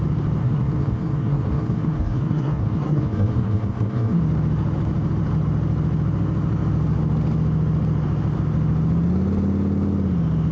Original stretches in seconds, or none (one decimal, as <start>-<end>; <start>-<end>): 0.0-0.4; 4.2-10.5